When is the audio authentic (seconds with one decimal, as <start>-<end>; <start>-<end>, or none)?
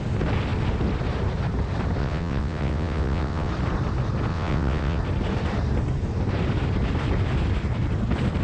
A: 0.0-2.0; 3.5-4.3; 5.0-8.4